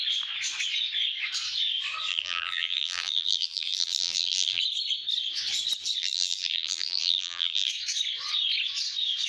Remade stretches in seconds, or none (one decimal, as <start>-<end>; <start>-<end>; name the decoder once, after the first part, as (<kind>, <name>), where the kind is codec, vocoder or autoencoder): 2.1-4.6 (vocoder, BigVGAN v2); 6.0-7.7